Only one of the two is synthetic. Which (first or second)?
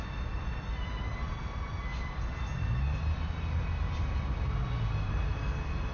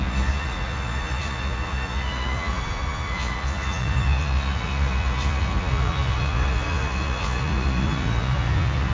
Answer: second